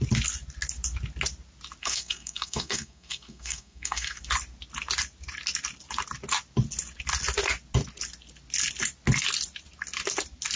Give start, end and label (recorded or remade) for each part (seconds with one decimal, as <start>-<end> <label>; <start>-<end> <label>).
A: 0.0-1.8 recorded; 1.8-4.2 remade; 4.2-10.6 recorded